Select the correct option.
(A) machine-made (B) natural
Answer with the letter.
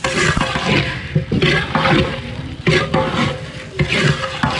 B